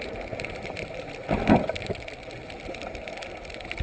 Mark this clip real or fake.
real